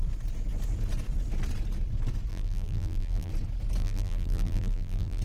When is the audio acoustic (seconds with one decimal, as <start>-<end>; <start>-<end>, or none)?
0.0-2.3; 3.3-3.8